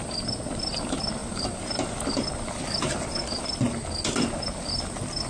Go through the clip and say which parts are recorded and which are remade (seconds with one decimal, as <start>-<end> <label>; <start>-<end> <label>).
0.0-5.3 recorded